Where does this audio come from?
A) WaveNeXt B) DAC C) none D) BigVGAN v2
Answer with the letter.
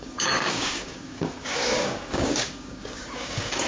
B